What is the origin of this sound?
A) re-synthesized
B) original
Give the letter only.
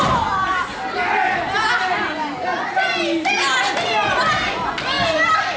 B